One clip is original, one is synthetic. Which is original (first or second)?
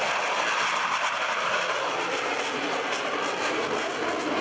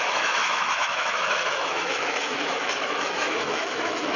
first